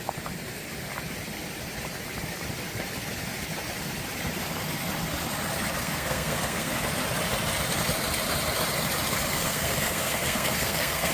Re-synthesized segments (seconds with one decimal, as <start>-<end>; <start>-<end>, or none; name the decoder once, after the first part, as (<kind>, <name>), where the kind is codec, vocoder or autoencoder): 5.8-6.7 (codec, SNAC); 9.4-11.1